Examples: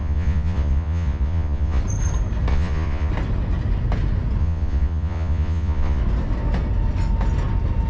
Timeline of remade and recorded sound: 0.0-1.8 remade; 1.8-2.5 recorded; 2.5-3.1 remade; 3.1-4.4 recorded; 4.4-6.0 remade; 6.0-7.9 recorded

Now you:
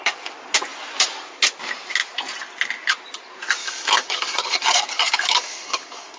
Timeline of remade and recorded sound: 0.0-3.6 recorded; 3.6-6.2 remade

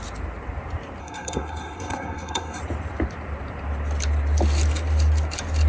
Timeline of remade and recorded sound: 0.0-1.0 recorded; 1.0-2.6 remade; 2.6-5.7 recorded

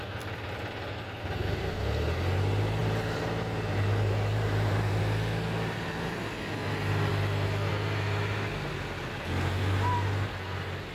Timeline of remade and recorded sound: 0.0-2.8 recorded; 2.8-5.0 remade; 5.0-10.9 recorded

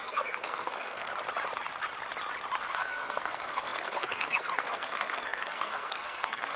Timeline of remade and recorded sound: 0.0-1.1 remade; 1.1-2.6 recorded; 2.6-6.6 remade

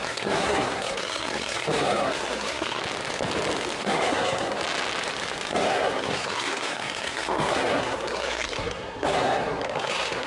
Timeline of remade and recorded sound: 0.0-2.8 remade; 2.8-3.8 recorded; 3.8-4.6 remade; 4.6-5.5 recorded; 5.5-10.3 remade

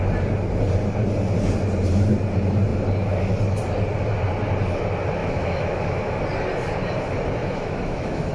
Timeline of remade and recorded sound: 0.0-5.2 recorded; 5.2-6.2 remade; 6.2-7.4 recorded; 7.4-8.3 remade